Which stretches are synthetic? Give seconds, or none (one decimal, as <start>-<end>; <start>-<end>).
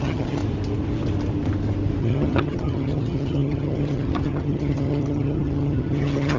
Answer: 0.0-0.4; 2.0-6.4